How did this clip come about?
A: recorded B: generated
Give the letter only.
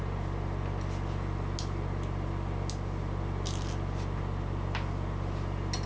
A